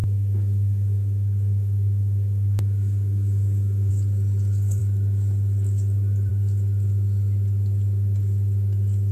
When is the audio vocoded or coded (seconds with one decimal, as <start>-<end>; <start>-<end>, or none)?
0.0-3.9